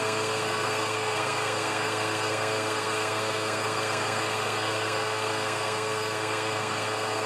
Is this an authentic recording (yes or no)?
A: no